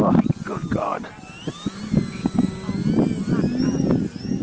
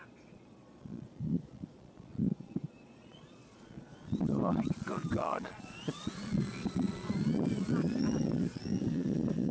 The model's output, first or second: second